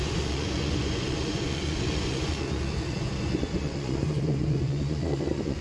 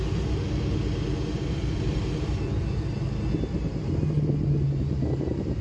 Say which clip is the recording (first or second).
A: second